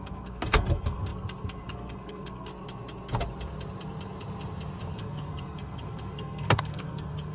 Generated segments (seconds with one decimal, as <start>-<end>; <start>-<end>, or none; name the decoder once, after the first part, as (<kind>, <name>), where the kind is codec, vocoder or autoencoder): 0.0-2.5 (codec, SNAC); 4.9-7.3